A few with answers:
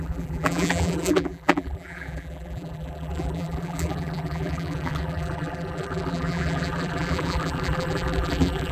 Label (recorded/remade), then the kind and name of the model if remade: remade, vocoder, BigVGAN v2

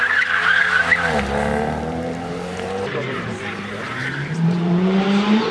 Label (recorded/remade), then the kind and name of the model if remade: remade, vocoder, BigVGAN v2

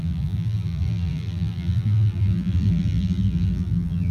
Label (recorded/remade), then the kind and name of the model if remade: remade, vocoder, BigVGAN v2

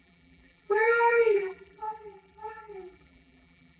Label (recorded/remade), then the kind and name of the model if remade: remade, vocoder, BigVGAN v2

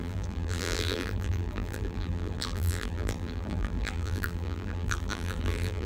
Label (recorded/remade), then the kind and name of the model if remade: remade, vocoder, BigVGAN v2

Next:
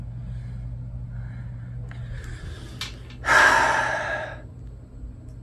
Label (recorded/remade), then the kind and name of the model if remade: recorded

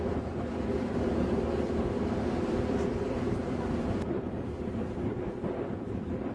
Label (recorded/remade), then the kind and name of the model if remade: remade, vocoder, BigVGAN v2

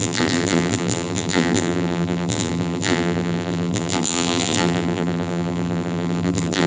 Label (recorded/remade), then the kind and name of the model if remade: remade, vocoder, BigVGAN v2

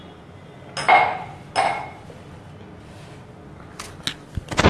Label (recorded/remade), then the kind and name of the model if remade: recorded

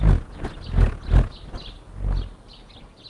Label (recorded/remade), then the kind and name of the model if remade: recorded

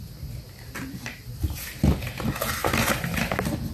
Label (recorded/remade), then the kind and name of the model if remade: recorded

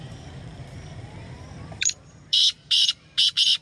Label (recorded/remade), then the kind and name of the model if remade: remade, vocoder, BigVGAN v2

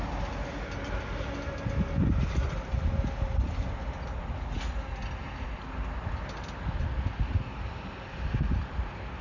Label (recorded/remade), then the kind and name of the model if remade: recorded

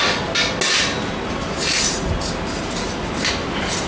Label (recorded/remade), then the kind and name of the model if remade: recorded